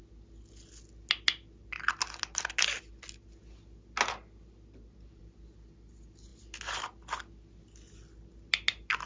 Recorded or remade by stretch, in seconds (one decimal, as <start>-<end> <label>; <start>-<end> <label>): 0.0-9.1 recorded